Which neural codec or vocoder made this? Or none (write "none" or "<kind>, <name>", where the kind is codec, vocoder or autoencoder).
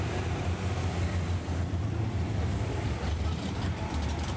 vocoder, BigVGAN v2